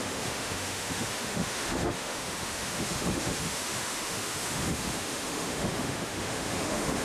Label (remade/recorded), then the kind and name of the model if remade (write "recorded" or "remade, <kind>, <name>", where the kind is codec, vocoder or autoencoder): remade, autoencoder, DAC-VAE